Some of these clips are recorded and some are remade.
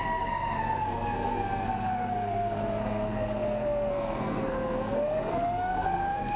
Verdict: remade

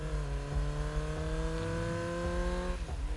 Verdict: recorded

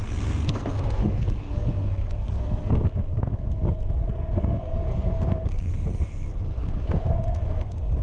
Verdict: remade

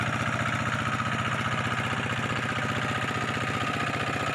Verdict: recorded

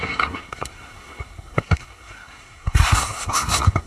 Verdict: remade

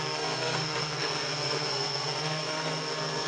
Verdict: remade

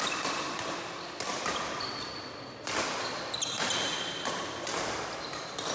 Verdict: recorded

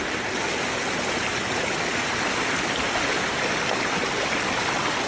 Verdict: recorded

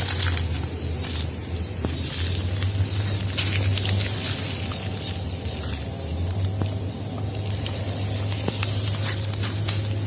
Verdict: recorded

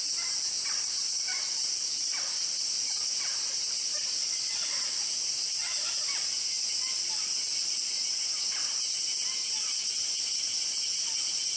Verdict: recorded